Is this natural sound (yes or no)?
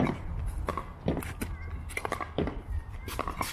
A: yes